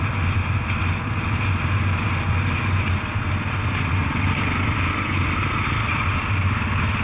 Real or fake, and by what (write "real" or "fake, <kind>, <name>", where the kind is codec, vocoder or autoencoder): real